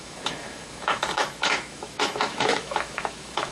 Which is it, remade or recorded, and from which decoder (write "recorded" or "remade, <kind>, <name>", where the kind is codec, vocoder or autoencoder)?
remade, autoencoder, DAC-VAE